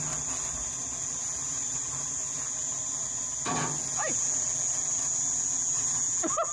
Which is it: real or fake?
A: real